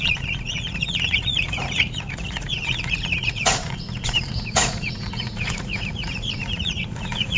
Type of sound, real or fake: fake